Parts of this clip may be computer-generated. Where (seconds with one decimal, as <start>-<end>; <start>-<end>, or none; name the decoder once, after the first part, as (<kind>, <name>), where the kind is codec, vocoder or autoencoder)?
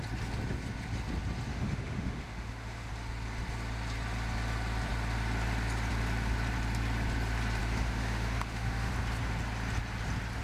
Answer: 1.5-2.9 (autoencoder, DAC-VAE); 7.6-8.9